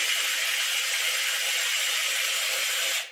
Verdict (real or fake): real